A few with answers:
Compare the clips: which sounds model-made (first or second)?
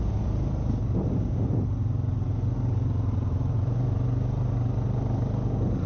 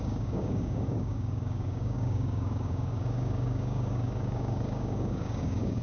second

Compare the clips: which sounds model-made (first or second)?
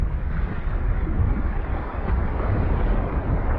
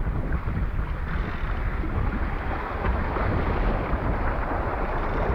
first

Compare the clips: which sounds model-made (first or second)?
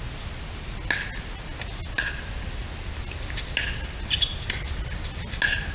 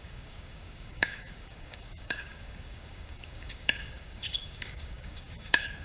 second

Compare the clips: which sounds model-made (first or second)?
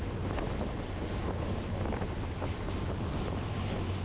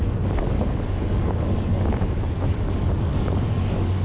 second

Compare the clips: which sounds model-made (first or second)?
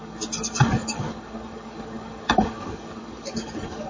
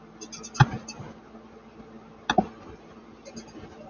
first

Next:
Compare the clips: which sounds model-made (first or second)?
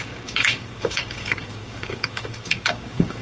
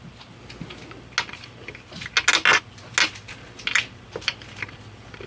first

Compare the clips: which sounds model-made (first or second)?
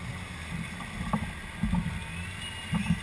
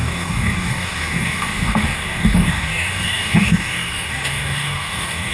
second